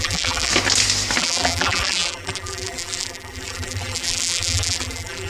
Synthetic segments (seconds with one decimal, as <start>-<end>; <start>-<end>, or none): 0.0-0.5; 1.2-5.3